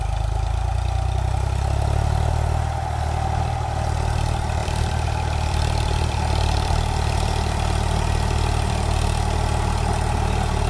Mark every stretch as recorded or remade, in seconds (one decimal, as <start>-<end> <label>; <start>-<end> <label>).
0.0-4.6 recorded; 4.6-6.8 remade; 6.8-10.7 recorded